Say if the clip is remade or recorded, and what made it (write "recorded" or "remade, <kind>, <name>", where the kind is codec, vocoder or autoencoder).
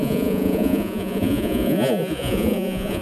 remade, vocoder, Vocos